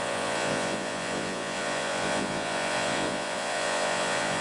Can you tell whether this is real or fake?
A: fake